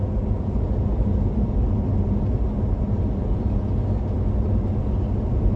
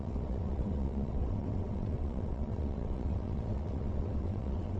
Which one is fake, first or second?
second